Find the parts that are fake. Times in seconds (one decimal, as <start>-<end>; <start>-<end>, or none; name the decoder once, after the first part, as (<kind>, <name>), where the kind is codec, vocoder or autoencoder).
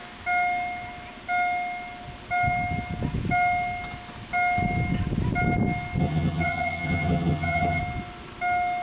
6.0-7.8 (vocoder, HiFi-GAN)